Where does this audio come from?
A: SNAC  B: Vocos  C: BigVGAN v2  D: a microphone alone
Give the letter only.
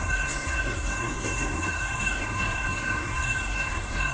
A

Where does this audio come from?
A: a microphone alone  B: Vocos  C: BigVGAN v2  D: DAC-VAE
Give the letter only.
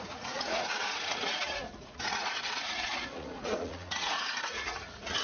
B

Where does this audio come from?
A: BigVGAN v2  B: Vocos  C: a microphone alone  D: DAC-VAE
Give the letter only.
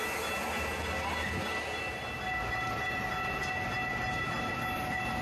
C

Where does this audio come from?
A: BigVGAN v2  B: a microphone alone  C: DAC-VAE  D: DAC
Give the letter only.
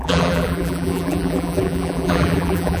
A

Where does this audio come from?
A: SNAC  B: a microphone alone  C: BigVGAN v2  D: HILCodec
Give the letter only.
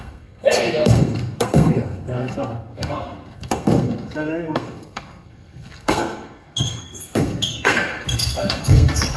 A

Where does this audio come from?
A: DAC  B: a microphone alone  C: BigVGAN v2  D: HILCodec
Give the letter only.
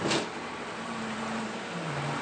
C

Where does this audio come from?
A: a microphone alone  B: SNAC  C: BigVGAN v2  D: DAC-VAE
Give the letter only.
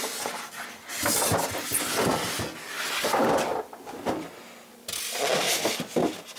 A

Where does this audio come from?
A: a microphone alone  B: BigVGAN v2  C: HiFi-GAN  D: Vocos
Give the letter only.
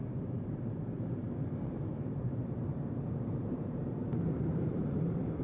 B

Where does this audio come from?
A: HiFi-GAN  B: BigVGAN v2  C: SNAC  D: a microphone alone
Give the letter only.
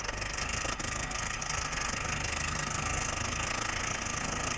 C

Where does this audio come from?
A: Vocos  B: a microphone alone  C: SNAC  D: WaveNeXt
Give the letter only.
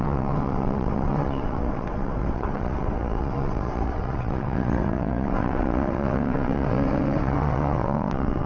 D